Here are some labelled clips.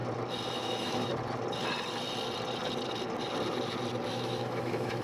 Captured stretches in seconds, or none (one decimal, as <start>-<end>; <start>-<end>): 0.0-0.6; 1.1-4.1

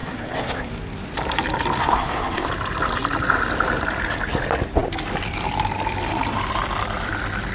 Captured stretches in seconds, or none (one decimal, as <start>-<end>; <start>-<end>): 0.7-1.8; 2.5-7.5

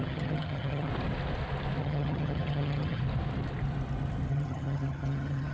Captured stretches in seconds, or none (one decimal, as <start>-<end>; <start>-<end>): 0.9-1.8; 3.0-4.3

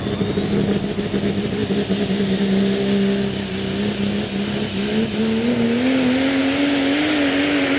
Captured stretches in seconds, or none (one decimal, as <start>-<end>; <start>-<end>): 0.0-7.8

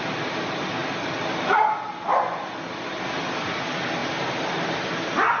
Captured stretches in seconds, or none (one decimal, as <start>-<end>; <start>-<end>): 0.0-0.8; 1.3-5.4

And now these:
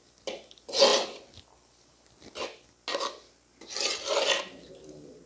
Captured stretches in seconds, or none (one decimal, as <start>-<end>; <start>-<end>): 0.0-5.3

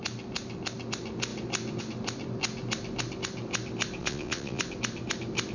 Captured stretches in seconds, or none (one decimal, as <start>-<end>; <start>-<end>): 0.0-4.0; 4.6-5.5

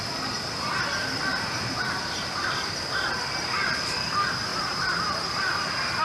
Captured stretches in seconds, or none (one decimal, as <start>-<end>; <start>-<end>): 0.0-1.3; 2.5-4.5; 5.1-6.0